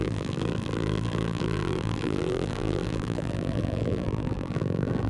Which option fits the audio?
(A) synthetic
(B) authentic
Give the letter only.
A